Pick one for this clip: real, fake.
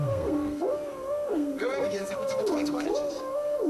fake